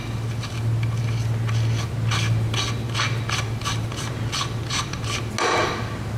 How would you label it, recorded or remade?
recorded